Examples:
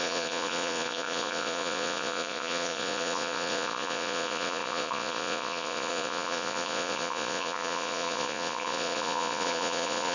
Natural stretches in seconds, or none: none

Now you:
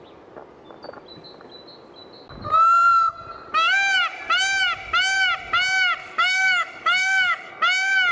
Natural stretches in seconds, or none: 0.0-6.0; 7.5-8.1

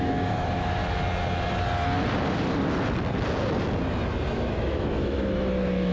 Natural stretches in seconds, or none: 0.8-4.3

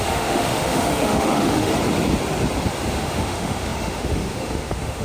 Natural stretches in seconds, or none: 1.7-2.9